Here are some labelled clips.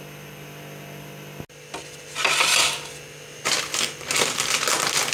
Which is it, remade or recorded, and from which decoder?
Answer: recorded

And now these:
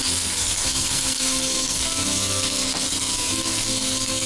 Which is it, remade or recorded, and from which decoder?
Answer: remade, codec, SNAC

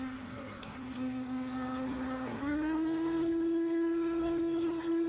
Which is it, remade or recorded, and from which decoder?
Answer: remade, codec, SNAC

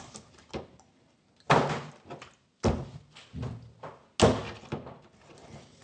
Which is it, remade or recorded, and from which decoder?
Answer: recorded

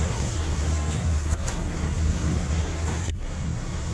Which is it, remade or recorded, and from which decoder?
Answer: remade, codec, SNAC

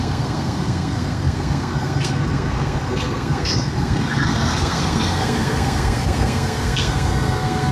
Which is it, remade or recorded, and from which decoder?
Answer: remade, codec, SNAC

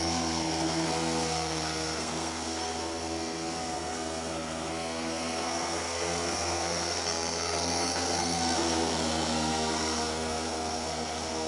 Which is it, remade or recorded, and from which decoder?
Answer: remade, codec, SNAC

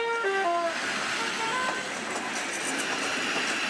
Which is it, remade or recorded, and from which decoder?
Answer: recorded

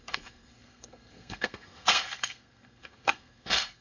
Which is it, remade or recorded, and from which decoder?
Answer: remade, codec, SNAC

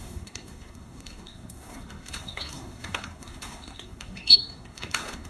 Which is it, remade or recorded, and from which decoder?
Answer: remade, codec, SNAC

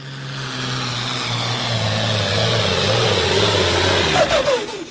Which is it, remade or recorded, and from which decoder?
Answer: recorded